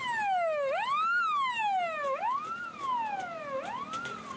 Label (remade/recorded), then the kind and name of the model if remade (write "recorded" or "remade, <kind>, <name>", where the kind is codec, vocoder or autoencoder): recorded